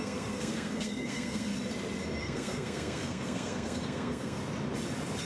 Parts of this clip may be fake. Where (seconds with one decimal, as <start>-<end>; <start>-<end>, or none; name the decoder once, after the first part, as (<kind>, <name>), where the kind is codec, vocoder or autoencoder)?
0.0-1.5 (codec, SNAC); 2.2-4.4